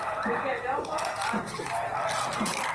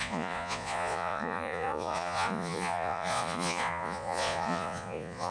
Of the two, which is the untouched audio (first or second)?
first